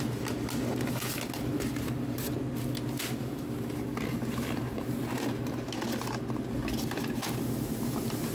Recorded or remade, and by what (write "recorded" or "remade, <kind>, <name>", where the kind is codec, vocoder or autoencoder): recorded